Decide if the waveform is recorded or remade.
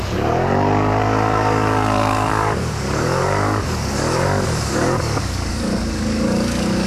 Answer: remade